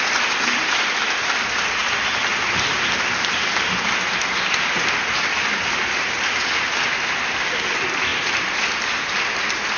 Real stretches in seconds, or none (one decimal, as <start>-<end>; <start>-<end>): 0.0-9.8